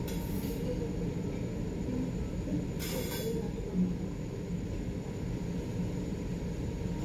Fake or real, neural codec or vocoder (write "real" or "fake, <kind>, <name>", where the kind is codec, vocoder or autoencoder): real